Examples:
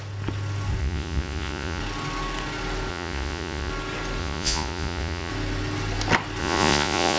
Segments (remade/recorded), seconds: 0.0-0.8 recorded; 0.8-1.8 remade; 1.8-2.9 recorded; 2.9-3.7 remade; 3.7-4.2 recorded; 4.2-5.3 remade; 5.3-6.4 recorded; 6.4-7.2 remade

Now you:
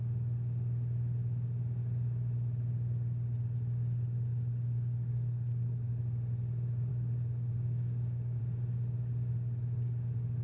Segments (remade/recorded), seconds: 0.0-4.5 recorded; 4.5-6.0 remade; 6.0-6.9 recorded; 6.9-8.4 remade; 8.4-10.4 recorded